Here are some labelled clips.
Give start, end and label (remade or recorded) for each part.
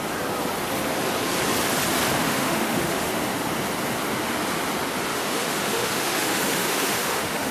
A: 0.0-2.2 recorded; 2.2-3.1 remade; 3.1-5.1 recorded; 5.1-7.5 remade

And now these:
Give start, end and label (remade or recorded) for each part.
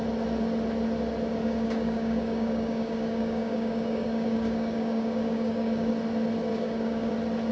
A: 0.0-1.4 recorded; 1.4-5.9 remade; 5.9-6.5 recorded; 6.5-7.1 remade; 7.1-7.5 recorded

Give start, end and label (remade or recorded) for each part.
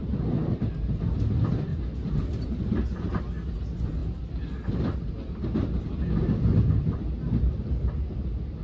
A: 0.0-0.6 remade; 0.6-1.7 recorded; 1.7-3.2 remade; 3.2-8.6 recorded